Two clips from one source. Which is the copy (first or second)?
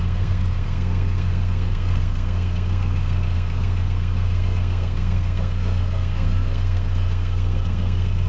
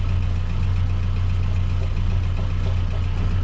first